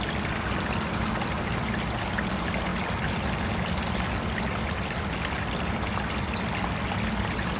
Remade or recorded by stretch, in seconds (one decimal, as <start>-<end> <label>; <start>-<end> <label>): 0.0-7.6 recorded